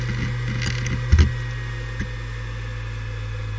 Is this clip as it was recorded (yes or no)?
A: yes